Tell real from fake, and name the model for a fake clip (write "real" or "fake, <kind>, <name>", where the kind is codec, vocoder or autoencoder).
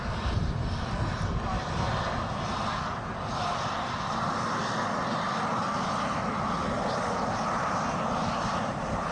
real